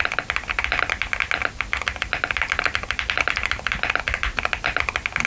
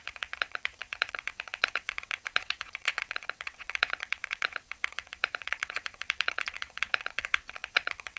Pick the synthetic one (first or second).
second